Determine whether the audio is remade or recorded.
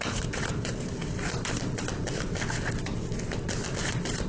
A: recorded